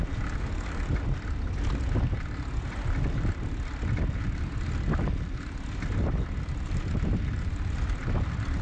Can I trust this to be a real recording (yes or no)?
yes